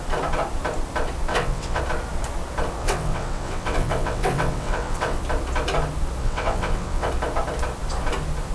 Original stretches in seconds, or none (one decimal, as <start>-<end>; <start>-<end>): 0.0-1.3; 1.8-2.8; 5.2-6.2; 7.1-8.5